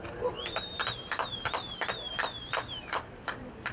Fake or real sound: real